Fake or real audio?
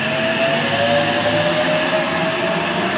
real